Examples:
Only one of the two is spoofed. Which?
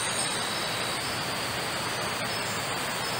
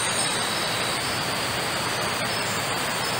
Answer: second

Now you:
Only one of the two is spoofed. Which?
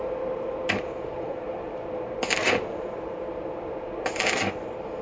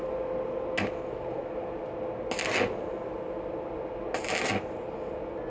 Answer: first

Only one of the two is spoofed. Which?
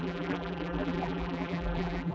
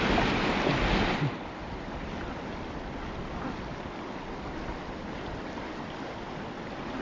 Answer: first